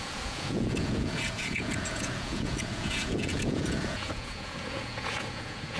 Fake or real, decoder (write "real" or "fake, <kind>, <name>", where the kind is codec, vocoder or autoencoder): fake, vocoder, Vocos